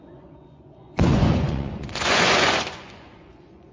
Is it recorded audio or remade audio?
remade